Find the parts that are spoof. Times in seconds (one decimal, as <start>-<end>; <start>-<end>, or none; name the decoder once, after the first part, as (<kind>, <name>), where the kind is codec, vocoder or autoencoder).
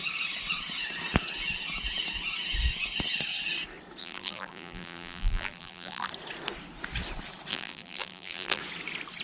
4.0-6.1 (vocoder, BigVGAN v2); 7.5-8.6